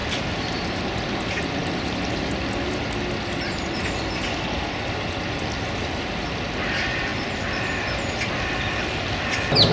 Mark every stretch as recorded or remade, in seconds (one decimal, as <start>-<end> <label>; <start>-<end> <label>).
0.0-9.7 recorded